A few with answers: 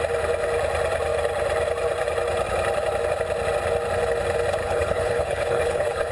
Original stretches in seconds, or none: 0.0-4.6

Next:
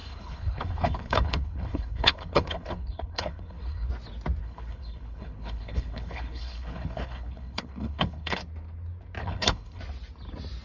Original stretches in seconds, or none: 3.9-4.4; 8.4-9.2; 9.8-10.6